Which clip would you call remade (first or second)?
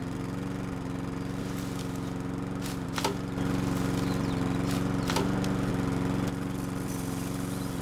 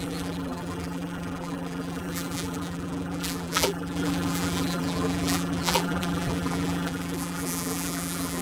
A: second